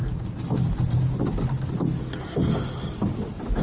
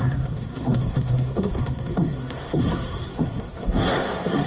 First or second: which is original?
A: first